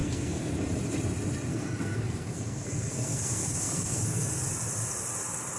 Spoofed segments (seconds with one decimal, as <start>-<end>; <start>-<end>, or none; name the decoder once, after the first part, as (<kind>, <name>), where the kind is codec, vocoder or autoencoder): 0.0-0.5 (codec, SNAC); 1.5-4.3